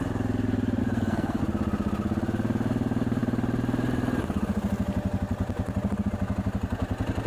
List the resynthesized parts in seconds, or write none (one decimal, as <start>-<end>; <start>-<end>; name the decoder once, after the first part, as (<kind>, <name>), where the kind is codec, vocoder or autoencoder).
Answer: 0.8-1.4 (codec, SNAC)